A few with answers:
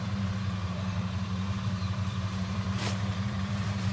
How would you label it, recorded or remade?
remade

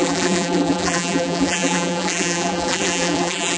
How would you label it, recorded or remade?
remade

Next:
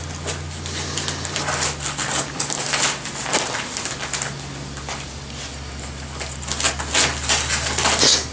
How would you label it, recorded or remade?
recorded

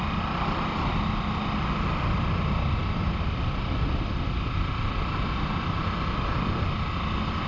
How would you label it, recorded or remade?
recorded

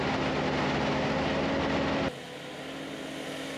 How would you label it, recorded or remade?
recorded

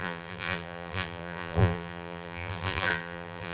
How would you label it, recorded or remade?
remade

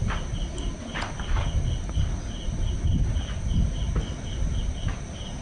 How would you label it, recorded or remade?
recorded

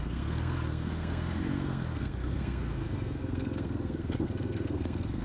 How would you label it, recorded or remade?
remade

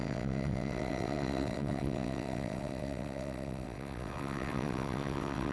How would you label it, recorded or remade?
remade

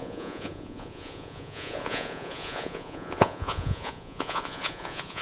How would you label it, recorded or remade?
remade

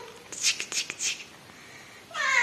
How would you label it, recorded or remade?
recorded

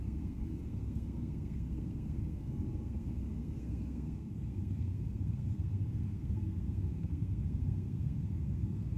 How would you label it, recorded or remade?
remade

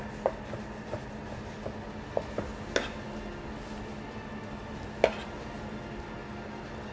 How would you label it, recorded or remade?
recorded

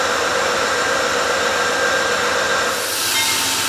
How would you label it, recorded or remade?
recorded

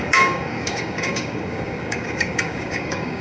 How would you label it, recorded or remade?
remade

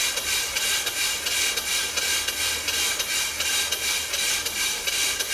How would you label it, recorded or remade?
recorded